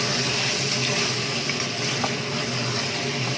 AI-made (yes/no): no